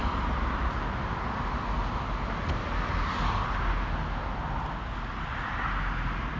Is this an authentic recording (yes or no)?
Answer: yes